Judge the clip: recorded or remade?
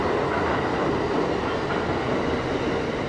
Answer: recorded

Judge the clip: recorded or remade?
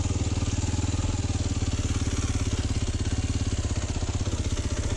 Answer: recorded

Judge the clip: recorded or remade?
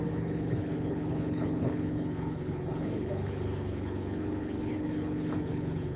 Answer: remade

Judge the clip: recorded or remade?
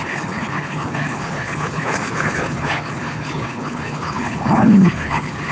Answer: remade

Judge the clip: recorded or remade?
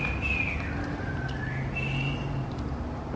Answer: recorded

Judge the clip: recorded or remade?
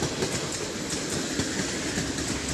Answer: recorded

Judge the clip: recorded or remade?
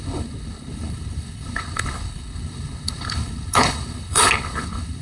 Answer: remade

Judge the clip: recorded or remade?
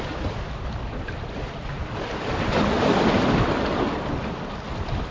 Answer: recorded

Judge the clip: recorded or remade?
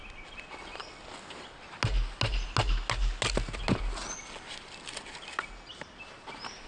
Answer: recorded